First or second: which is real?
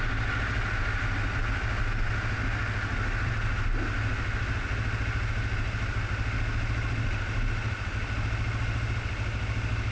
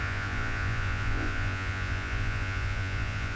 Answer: first